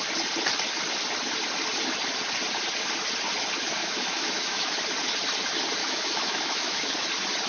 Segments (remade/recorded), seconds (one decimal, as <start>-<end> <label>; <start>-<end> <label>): 0.0-3.8 recorded; 3.8-4.8 remade; 4.8-5.8 recorded; 5.8-6.9 remade; 6.9-7.5 recorded